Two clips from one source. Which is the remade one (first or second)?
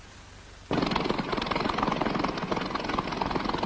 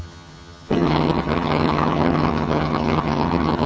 second